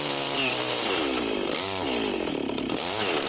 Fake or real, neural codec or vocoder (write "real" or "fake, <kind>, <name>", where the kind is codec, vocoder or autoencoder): real